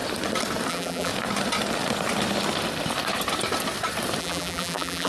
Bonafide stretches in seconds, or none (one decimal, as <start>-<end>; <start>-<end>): 0.0-0.7; 1.1-4.2